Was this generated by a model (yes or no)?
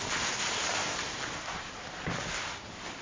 no